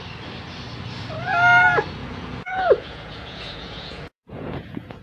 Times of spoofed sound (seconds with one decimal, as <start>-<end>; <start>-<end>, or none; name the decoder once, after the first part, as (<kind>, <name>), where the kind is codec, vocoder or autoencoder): 2.0-5.0 (vocoder, Vocos)